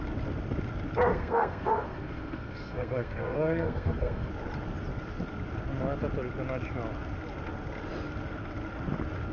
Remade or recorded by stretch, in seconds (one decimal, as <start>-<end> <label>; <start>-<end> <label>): 0.0-1.1 recorded; 1.1-4.3 remade; 4.3-9.3 recorded